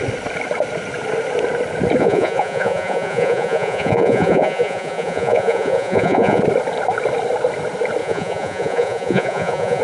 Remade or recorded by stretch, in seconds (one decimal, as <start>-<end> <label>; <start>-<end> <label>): 0.0-2.0 recorded; 2.0-6.4 remade; 6.4-8.0 recorded; 8.0-9.8 remade